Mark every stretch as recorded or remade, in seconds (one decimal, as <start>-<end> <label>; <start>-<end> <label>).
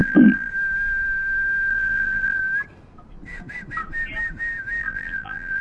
0.0-0.5 remade; 0.5-1.7 recorded; 1.7-2.4 remade; 2.4-4.8 recorded; 4.8-5.6 remade